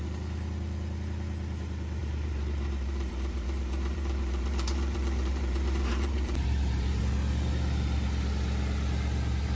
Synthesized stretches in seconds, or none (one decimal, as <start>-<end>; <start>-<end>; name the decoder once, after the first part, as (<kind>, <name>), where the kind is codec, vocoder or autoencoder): 2.0-7.1 (vocoder, BigVGAN v2)

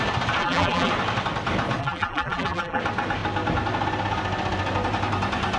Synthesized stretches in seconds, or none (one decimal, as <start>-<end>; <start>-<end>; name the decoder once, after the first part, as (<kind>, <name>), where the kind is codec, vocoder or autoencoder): 0.4-0.9 (vocoder, BigVGAN v2); 1.8-2.8

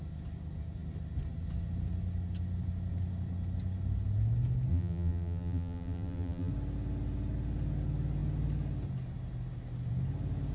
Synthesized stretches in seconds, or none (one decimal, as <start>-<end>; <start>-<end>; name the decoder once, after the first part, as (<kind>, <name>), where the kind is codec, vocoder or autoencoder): 4.7-6.5 (vocoder, BigVGAN v2)